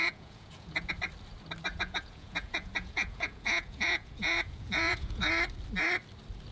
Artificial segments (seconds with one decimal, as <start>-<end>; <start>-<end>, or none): 0.0-0.9; 1.7-5.3